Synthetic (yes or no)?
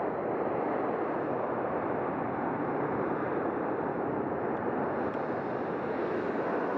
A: no